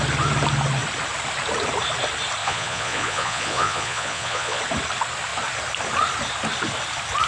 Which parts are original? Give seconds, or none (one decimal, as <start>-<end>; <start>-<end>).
0.0-2.4; 4.6-7.3